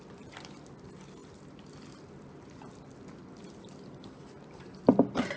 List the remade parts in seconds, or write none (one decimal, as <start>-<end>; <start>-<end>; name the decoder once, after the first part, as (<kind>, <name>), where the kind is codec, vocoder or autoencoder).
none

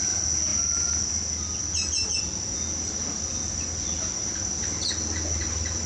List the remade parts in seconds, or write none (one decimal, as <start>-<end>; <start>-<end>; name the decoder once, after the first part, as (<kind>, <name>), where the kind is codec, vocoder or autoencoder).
none

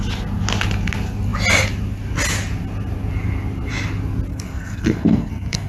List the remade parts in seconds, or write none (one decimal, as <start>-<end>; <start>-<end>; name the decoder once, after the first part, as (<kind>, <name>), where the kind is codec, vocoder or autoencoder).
4.3-5.7 (codec, SNAC)

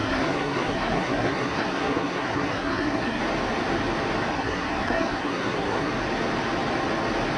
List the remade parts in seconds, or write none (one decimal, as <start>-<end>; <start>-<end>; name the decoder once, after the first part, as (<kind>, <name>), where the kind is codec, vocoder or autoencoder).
0.0-3.2 (codec, SNAC); 4.3-5.9

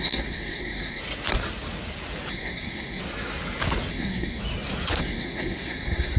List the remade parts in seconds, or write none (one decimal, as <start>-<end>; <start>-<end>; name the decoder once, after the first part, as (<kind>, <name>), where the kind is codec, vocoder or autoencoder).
0.0-1.0 (codec, SNAC); 2.3-3.0; 3.9-4.4; 5.0-6.2

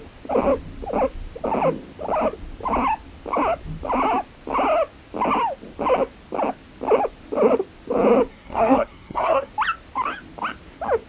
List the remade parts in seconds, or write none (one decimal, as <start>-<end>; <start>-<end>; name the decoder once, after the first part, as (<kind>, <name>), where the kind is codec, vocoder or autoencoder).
8.3-9.5 (codec, SNAC)

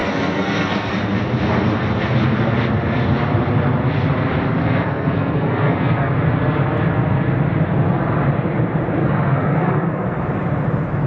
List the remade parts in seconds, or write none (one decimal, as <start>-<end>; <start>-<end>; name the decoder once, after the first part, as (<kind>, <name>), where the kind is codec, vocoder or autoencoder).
0.0-0.9 (codec, SNAC); 4.6-6.1; 9.0-10.2

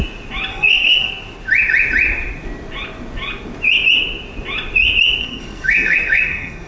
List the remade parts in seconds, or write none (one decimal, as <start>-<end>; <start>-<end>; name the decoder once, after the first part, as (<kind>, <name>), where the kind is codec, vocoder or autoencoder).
0.5-1.1 (codec, SNAC); 5.2-6.7